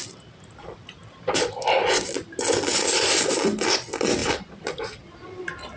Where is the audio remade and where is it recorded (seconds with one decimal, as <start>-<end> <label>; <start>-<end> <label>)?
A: 0.0-5.8 recorded